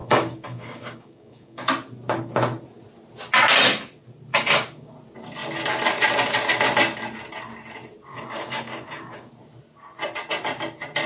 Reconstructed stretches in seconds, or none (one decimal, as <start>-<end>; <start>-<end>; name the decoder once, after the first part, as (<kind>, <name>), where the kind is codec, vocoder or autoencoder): 0.0-1.7 (codec, DAC); 4.3-4.9; 8.1-9.3

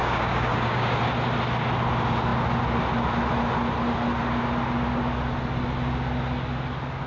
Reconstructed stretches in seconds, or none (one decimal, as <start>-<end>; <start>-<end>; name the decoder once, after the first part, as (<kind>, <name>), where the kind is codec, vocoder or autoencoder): 0.0-1.0 (codec, DAC)

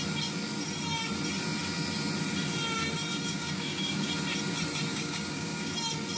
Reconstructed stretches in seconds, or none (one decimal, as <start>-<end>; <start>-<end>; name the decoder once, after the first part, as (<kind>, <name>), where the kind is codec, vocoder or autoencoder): 3.1-4.1 (codec, DAC); 4.9-5.7

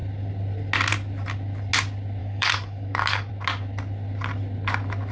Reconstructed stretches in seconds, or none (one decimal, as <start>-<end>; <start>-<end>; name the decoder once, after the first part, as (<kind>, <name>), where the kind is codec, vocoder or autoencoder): 2.2-3.3 (codec, DAC)